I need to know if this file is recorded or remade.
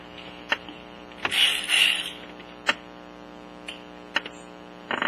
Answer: recorded